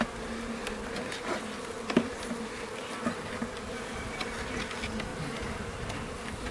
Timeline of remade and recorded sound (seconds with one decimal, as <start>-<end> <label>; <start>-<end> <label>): 0.0-5.1 recorded; 5.1-5.6 remade; 5.6-6.5 recorded